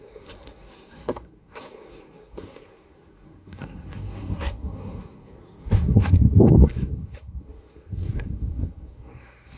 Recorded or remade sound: remade